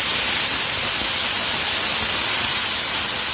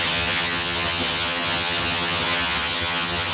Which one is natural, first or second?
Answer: first